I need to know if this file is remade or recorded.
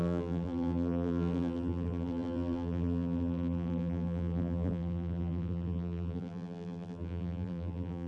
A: remade